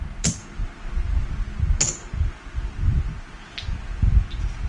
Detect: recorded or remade recorded